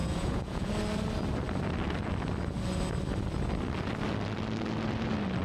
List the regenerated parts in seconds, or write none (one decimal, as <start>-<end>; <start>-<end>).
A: 0.0-0.7